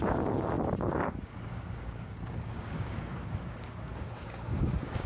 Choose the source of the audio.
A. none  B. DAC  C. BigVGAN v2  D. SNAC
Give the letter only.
B